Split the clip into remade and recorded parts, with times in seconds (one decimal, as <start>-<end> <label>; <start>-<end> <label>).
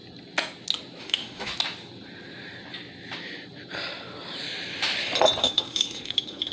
0.0-1.0 recorded; 1.0-1.5 remade; 1.5-5.4 recorded; 5.4-6.5 remade